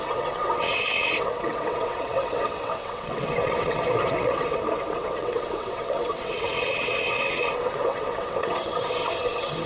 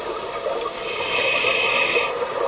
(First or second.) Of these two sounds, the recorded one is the second